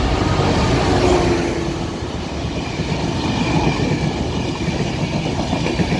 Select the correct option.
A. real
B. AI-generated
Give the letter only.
A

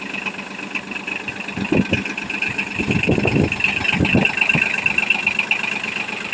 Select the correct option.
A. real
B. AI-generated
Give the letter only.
A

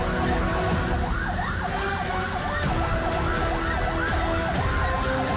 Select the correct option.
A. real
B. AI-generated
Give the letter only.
A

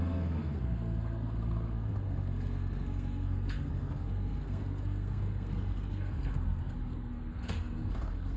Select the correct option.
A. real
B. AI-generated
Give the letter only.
B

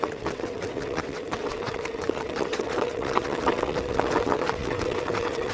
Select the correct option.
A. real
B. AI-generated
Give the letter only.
B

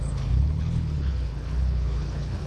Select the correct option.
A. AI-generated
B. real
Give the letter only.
A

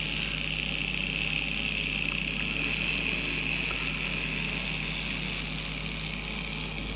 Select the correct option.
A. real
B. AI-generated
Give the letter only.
A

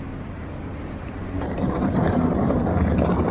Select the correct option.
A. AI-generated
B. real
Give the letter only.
A